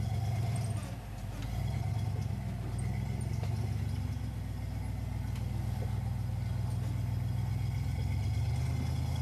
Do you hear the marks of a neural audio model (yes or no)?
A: no